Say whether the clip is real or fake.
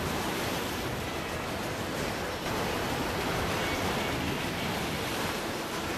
real